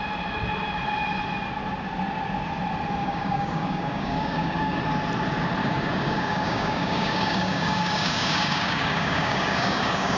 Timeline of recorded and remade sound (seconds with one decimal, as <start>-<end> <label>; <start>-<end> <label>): 0.0-3.0 recorded; 3.0-4.8 remade; 4.8-5.6 recorded; 5.6-10.2 remade